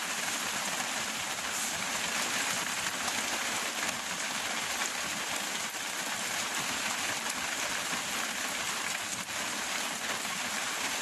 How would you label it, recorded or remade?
recorded